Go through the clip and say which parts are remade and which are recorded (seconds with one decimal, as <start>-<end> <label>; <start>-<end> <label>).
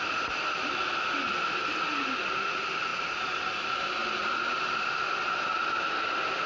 0.0-6.5 recorded